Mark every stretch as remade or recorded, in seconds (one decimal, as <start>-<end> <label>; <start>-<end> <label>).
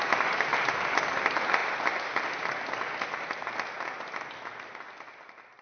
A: 0.0-5.6 recorded